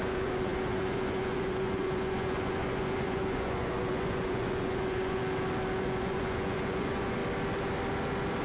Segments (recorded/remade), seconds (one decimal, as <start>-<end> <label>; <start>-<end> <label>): 0.0-5.2 remade; 5.2-5.8 recorded; 5.8-7.2 remade; 7.2-8.4 recorded